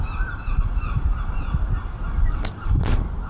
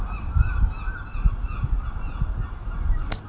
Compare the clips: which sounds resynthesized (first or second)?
first